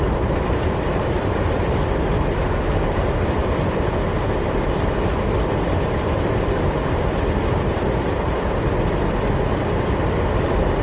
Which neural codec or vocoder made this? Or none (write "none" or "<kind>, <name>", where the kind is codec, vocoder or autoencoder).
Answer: vocoder, BigVGAN v2